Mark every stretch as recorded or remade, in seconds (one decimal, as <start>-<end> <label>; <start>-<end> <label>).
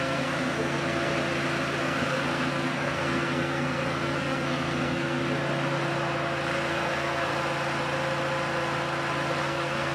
0.0-1.1 remade; 1.1-1.8 recorded; 1.8-5.2 remade; 5.2-6.7 recorded; 6.7-7.3 remade; 7.3-9.4 recorded; 9.4-9.9 remade